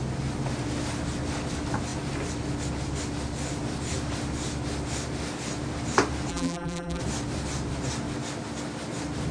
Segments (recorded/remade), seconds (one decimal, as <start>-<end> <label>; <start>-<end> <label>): 0.0-6.3 recorded; 6.3-7.0 remade; 7.0-9.3 recorded